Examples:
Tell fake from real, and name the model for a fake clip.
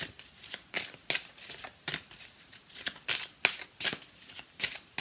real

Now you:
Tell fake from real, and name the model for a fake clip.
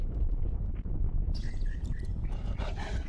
fake, vocoder, BigVGAN v2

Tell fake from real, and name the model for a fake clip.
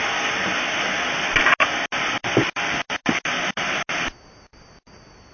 real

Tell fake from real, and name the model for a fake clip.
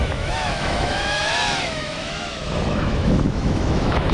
fake, autoencoder, DAC-VAE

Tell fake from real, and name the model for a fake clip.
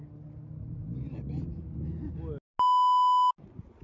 real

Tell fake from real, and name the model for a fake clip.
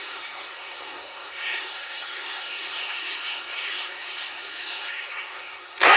fake, codec, SNAC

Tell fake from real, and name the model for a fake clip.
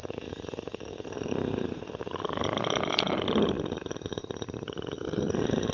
real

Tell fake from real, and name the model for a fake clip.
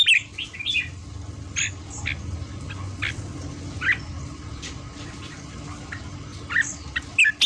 real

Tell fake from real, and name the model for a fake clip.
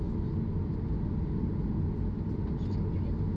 real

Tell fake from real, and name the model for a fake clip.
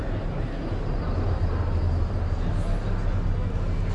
real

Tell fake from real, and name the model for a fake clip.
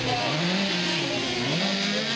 real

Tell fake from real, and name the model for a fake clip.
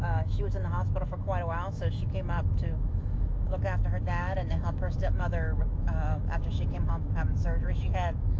fake, autoencoder, DAC-VAE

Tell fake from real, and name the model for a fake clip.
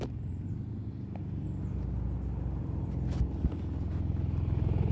real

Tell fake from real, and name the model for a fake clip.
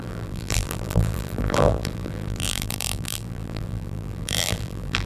fake, vocoder, BigVGAN v2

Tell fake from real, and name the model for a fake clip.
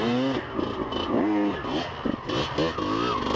real